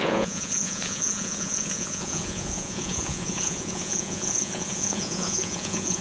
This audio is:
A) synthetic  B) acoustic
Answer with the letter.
A